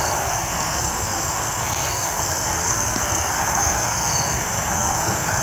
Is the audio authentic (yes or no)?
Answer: no